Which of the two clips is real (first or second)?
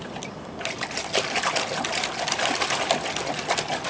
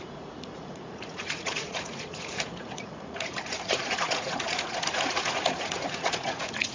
first